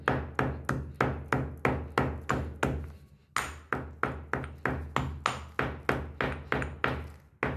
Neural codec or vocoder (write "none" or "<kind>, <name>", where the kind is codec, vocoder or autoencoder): none